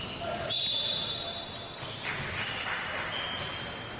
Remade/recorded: recorded